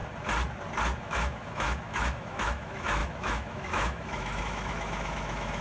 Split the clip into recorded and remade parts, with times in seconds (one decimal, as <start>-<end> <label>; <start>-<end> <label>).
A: 0.0-1.0 recorded; 1.0-5.6 remade